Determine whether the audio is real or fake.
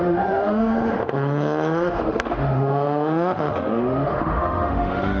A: fake